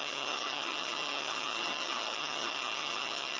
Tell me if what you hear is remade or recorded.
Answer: remade